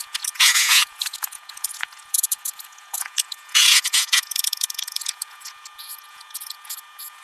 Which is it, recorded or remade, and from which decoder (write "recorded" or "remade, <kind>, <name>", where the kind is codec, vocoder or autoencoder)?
remade, vocoder, Vocos